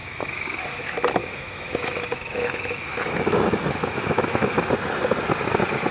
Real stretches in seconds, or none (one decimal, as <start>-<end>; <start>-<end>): 0.6-1.2; 4.7-5.9